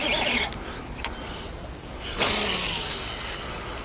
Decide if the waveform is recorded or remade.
recorded